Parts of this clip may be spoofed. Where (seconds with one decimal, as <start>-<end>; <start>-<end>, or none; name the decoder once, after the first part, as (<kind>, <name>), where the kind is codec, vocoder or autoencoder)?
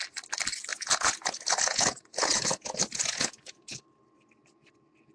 0.7-3.8 (vocoder, Vocos)